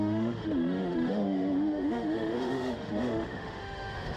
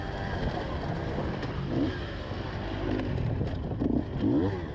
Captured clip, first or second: second